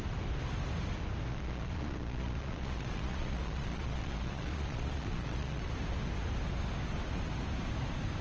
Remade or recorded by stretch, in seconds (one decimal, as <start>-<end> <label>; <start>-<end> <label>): 0.0-1.3 recorded; 1.3-5.7 remade; 5.7-8.2 recorded